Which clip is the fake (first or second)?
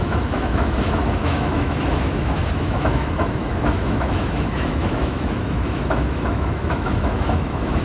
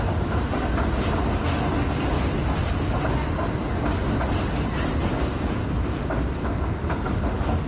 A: first